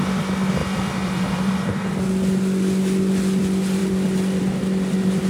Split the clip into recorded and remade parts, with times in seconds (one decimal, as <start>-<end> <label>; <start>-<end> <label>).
0.0-0.6 recorded; 0.6-2.0 remade; 2.0-3.8 recorded; 3.8-4.4 remade; 4.4-5.3 recorded